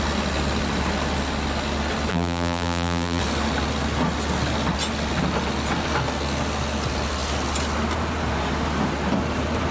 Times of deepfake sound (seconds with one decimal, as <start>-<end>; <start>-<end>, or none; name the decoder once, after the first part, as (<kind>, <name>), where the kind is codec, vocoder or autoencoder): 2.1-3.2 (vocoder, BigVGAN v2)